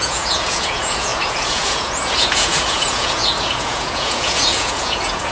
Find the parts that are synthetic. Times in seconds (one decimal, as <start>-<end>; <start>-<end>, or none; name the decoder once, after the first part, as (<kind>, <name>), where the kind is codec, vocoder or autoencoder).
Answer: 0.0-5.3 (vocoder, Vocos)